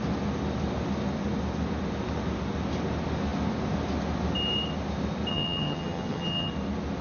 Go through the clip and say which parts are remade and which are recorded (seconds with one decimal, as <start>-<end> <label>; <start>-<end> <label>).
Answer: 0.0-5.3 recorded; 5.3-6.5 remade; 6.5-7.0 recorded